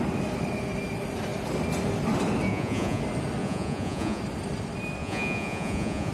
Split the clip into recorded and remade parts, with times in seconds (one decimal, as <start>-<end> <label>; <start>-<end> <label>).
0.0-2.5 recorded; 2.5-3.0 remade; 3.0-3.4 recorded; 3.4-4.2 remade; 4.2-5.0 recorded; 5.0-6.1 remade